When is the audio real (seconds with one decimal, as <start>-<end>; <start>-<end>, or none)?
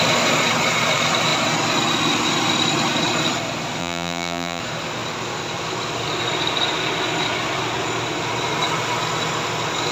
0.0-3.8; 4.6-9.9